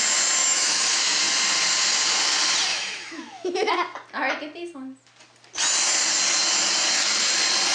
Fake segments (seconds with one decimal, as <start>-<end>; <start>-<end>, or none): 0.4-1.2; 2.7-3.7